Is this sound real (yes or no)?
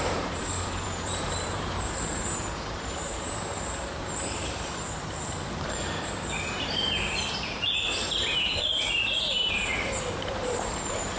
no